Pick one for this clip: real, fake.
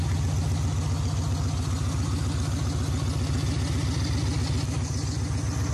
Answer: real